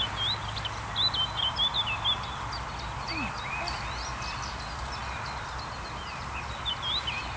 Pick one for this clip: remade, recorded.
recorded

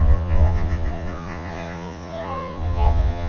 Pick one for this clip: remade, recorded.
remade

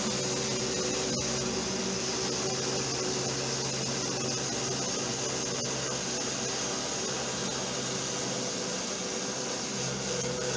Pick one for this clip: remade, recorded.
recorded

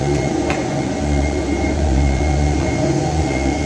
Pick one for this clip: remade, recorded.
remade